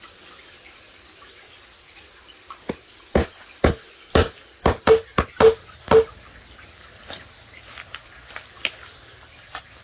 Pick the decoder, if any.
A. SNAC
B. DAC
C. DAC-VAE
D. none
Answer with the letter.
D